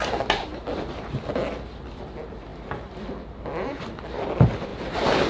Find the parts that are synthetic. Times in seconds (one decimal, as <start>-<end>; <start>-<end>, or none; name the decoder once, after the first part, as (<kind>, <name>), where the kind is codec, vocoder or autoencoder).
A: none